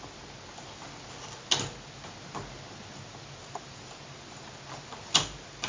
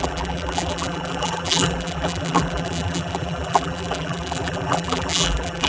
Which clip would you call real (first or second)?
first